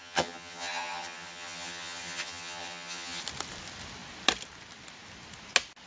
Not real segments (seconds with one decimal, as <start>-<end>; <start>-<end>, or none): 0.0-3.2

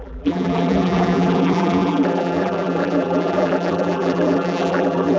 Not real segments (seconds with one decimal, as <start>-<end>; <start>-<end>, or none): 0.0-5.2

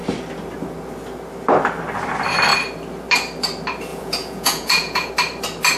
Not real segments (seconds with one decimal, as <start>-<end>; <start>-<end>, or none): 3.9-5.1

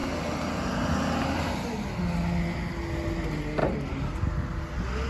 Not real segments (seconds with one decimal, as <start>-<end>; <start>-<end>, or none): none

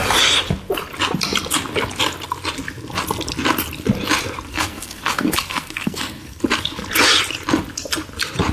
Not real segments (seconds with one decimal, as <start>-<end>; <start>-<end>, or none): 4.5-6.4

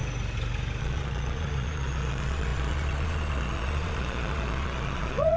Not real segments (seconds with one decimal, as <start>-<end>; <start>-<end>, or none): 0.8-5.4

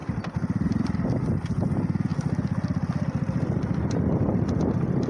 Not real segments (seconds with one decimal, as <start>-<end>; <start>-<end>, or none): none

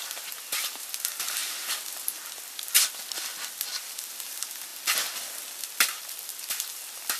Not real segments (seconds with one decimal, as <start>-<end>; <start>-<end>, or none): none